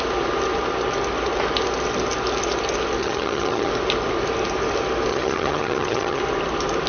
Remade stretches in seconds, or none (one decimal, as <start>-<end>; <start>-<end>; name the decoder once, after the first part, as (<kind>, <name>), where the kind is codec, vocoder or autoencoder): 3.0-3.7 (vocoder, HiFi-GAN); 5.1-6.2